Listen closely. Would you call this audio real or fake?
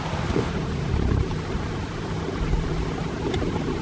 real